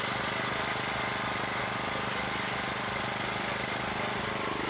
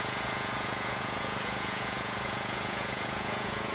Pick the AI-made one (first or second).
second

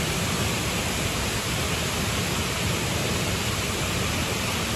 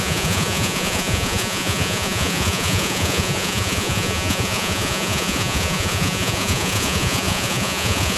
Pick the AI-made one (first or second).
second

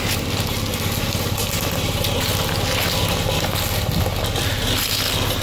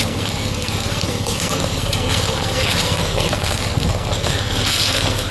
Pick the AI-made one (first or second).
second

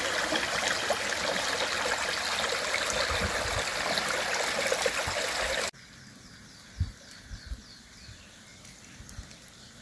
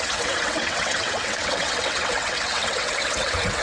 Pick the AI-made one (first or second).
second